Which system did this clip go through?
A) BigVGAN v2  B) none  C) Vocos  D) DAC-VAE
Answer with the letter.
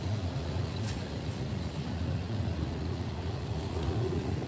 C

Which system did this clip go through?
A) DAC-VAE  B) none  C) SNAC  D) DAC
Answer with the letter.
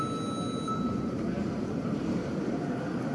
B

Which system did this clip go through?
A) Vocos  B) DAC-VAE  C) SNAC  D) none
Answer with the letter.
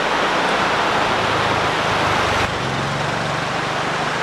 D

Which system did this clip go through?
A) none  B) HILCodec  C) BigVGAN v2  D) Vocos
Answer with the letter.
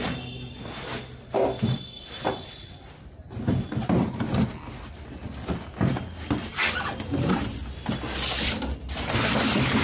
A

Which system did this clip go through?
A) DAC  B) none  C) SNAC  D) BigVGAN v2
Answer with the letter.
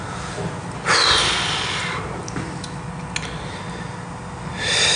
B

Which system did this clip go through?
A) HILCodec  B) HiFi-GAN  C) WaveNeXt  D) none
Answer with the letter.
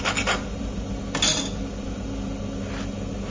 D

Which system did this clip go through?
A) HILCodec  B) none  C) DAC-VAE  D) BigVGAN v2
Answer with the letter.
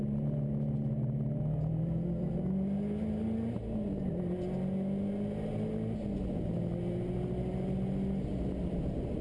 B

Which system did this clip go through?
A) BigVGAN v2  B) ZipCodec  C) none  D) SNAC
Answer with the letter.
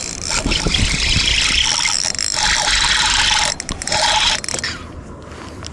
C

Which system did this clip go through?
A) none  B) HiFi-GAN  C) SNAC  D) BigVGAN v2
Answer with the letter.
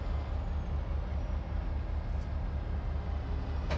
A